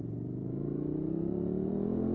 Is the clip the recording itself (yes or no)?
no